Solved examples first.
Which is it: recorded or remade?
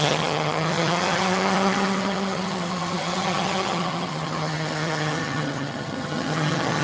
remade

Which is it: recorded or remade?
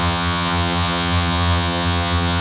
remade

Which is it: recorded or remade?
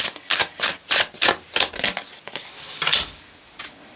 recorded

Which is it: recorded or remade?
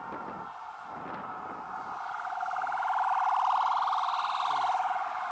recorded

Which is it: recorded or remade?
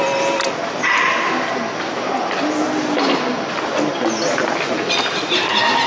recorded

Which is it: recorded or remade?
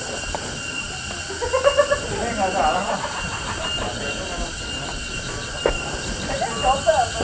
recorded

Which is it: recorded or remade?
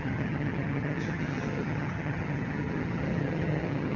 remade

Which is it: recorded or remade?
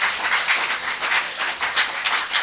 recorded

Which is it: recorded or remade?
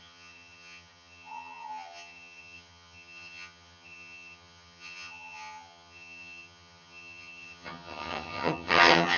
remade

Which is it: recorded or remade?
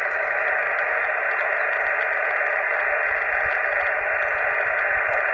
recorded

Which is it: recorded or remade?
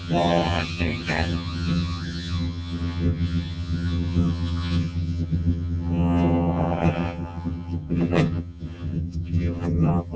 remade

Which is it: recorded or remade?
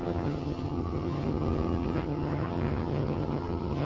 remade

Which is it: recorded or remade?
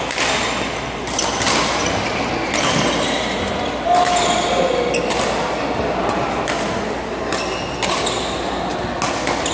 recorded